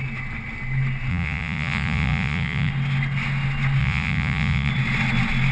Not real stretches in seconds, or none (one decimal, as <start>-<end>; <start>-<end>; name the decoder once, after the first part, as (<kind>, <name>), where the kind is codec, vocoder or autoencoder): 1.1-2.7 (vocoder, Vocos); 3.8-4.7